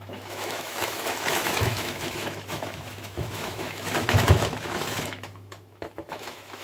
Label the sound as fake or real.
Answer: fake